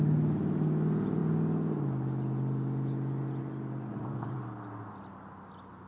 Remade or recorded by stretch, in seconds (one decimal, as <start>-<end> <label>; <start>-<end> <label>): 0.0-3.9 recorded; 3.9-4.4 remade; 4.4-5.9 recorded